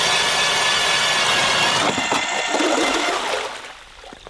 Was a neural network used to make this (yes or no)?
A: no